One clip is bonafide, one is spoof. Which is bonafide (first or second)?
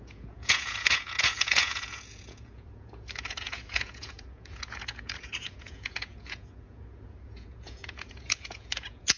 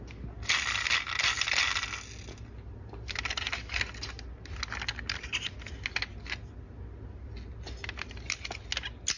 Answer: second